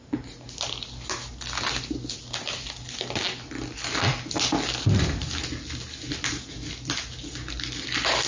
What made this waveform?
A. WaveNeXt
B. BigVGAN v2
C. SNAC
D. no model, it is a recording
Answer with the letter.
D